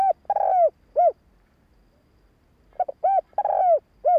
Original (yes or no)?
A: yes